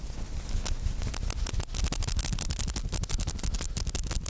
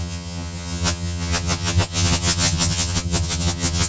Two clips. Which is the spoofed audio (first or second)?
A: second